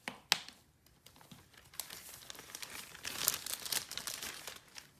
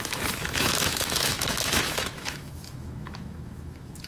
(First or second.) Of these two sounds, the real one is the first